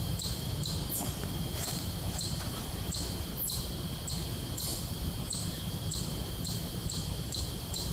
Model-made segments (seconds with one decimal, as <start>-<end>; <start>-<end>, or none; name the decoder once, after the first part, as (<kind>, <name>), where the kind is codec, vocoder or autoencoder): 0.0-3.3 (autoencoder, DAC-VAE); 4.1-7.9

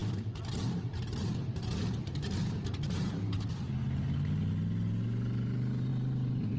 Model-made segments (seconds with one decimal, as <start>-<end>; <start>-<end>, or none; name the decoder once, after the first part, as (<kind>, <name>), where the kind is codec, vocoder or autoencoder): 0.0-3.7 (vocoder, BigVGAN v2); 5.9-6.6

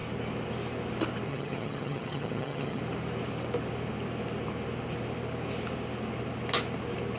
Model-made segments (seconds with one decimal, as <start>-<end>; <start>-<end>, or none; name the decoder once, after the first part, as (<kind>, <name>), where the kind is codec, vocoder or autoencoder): 1.3-2.8 (vocoder, HiFi-GAN)

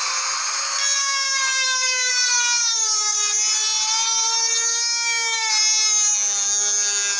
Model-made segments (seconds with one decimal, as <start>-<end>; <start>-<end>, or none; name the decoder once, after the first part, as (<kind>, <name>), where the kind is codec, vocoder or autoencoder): 1.0-2.1 (codec, DAC); 2.7-3.2; 4.7-5.5

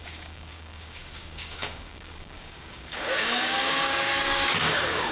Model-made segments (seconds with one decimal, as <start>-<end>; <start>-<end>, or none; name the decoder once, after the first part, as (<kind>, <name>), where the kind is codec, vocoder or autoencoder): 0.0-5.1 (codec, DAC)